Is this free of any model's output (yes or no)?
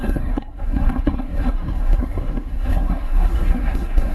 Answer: no